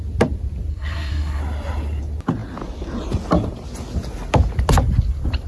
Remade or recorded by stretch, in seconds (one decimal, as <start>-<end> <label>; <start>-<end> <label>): 0.0-0.7 recorded; 0.7-1.4 remade; 1.4-5.5 recorded